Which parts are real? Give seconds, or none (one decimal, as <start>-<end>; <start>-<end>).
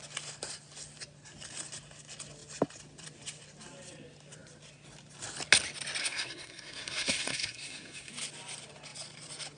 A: 0.0-6.0; 8.1-9.6